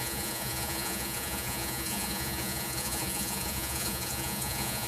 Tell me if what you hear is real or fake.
fake